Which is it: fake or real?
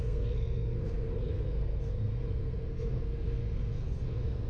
fake